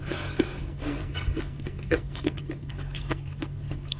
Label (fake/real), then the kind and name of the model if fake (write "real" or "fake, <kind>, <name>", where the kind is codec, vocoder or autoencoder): fake, codec, SNAC